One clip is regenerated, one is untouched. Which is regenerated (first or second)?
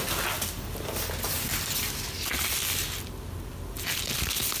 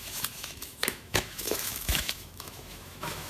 second